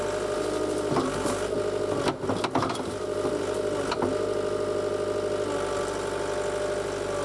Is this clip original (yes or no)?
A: yes